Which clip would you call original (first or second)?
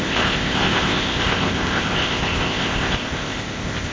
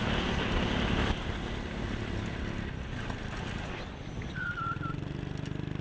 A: second